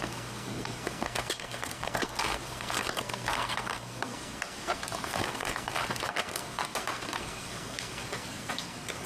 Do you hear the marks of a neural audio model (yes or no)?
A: yes